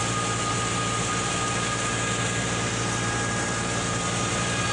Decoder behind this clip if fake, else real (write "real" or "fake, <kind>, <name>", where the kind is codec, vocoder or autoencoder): real